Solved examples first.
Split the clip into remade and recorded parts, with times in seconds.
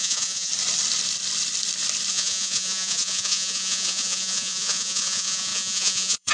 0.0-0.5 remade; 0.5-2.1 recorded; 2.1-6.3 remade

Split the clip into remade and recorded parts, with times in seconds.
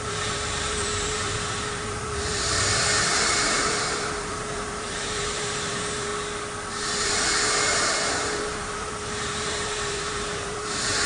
0.0-6.1 remade; 6.1-6.7 recorded; 6.7-11.1 remade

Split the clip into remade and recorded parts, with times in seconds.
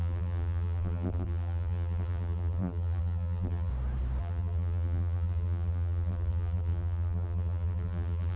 0.0-3.7 remade; 3.7-4.2 recorded; 4.2-8.4 remade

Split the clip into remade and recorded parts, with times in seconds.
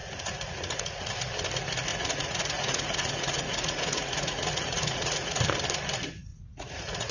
0.0-1.1 remade; 1.1-1.9 recorded; 1.9-5.4 remade; 5.4-6.3 recorded; 6.3-7.1 remade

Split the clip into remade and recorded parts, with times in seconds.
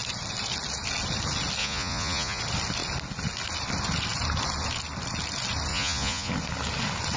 0.0-1.6 recorded; 1.6-2.4 remade; 2.4-5.7 recorded; 5.7-6.3 remade; 6.3-7.2 recorded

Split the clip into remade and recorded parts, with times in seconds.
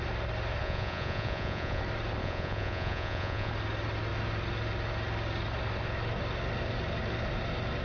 0.0-0.6 recorded; 0.6-1.8 remade; 1.8-2.2 recorded; 2.2-3.5 remade; 3.5-7.8 recorded